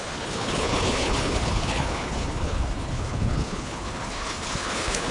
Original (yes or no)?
no